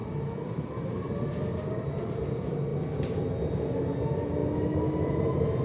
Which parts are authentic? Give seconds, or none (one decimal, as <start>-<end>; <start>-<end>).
1.0-5.6